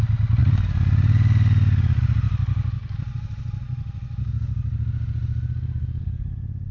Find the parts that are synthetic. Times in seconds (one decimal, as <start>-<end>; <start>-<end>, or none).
0.4-3.2